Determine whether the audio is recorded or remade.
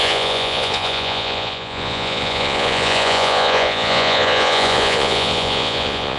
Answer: remade